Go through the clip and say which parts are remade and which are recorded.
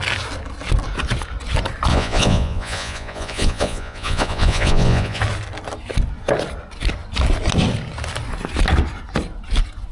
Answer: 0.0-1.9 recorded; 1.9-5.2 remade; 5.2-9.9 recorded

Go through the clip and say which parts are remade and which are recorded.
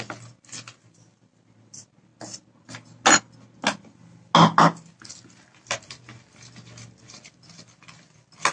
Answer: 0.0-8.5 recorded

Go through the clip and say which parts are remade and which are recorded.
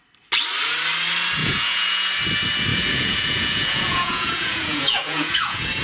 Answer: 0.0-1.4 recorded; 1.4-2.1 remade; 2.1-2.7 recorded; 2.7-5.8 remade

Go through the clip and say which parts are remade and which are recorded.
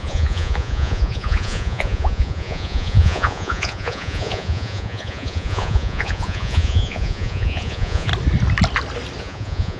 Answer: 0.0-8.1 remade; 8.1-9.2 recorded; 9.2-9.8 remade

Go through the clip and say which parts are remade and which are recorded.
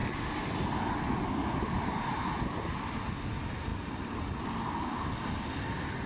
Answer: 0.0-6.1 recorded